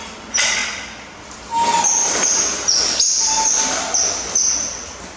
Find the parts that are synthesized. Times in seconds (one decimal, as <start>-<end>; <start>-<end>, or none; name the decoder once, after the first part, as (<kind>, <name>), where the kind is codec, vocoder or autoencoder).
0.6-1.4 (vocoder, BigVGAN v2); 2.0-5.2